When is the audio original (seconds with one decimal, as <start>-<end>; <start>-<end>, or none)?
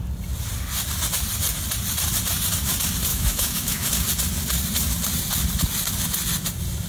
0.0-3.1; 3.9-6.9